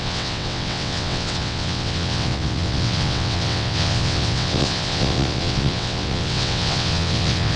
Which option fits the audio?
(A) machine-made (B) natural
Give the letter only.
A